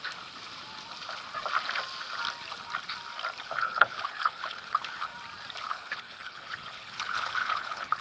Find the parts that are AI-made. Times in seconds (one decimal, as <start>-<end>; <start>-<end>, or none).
3.4-5.1; 5.6-8.0